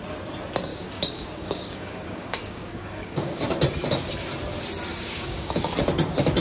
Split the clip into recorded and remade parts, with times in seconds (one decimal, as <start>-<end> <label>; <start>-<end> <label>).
0.0-0.7 recorded; 0.7-3.4 remade; 3.4-4.9 recorded; 4.9-5.6 remade; 5.6-6.4 recorded

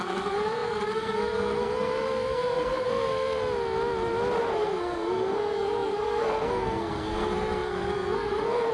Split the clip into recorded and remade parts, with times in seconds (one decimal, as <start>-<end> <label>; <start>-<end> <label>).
0.0-3.4 remade; 3.4-4.4 recorded; 4.4-8.7 remade

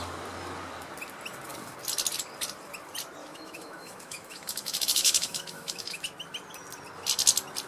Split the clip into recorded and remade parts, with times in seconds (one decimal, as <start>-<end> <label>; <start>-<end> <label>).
0.0-3.2 recorded; 3.2-6.0 remade; 6.0-7.7 recorded

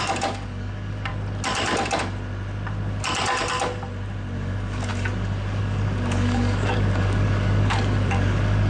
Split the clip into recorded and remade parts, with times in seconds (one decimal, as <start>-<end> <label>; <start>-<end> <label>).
0.0-1.1 remade; 1.1-4.4 recorded; 4.4-8.7 remade

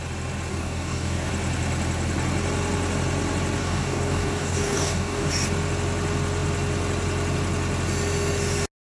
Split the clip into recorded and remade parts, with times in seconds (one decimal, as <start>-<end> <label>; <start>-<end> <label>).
0.0-0.5 recorded; 0.5-1.3 remade; 1.3-3.6 recorded; 3.6-5.3 remade; 5.3-9.0 recorded